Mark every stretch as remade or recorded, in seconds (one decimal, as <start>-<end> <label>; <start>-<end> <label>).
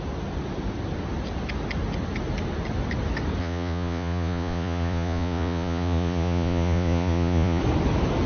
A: 0.0-3.4 recorded; 3.4-7.6 remade; 7.6-8.3 recorded